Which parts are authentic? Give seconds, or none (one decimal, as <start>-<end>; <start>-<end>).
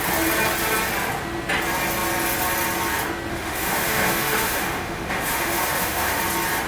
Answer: 0.0-3.3; 6.2-6.7